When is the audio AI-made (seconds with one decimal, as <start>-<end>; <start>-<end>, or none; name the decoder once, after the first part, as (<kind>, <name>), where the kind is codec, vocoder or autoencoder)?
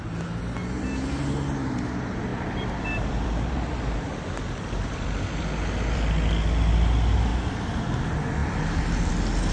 2.3-6.1 (vocoder, BigVGAN v2); 8.4-9.1